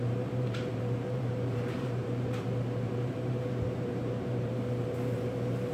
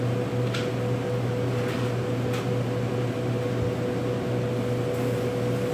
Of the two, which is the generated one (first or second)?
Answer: first